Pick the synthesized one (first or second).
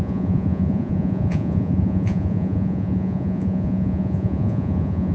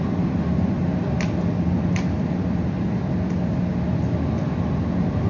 first